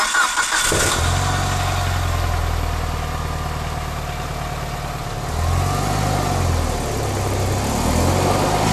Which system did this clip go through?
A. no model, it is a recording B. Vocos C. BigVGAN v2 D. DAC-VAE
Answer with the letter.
A